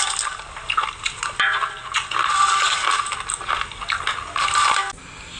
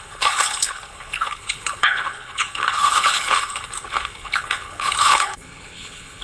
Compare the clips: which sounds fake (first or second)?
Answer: second